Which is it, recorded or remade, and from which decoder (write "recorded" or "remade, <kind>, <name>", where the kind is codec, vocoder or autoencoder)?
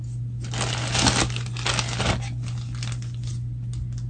recorded